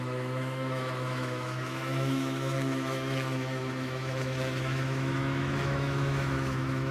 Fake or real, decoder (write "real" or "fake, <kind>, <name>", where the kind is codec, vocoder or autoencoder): fake, autoencoder, DAC-VAE